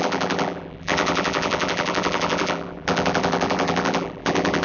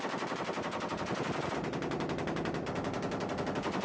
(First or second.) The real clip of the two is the second